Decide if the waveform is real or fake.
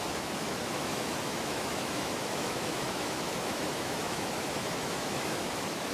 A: fake